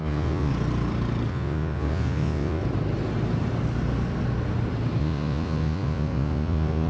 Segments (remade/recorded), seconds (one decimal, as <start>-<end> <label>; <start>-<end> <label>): 0.0-0.5 remade; 0.5-1.3 recorded; 1.3-2.6 remade; 2.6-5.0 recorded; 5.0-6.9 remade